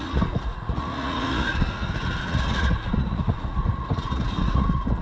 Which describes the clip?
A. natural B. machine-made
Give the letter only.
B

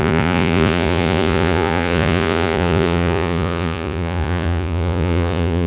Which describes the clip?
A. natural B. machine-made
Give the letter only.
B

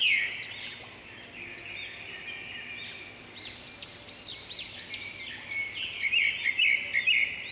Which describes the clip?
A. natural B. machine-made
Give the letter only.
A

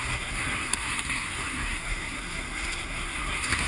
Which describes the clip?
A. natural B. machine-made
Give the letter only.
B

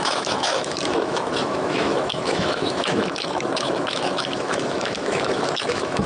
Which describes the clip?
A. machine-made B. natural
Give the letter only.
A